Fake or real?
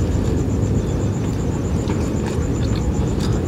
real